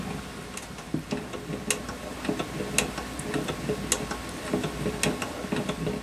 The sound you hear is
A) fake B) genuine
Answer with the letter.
B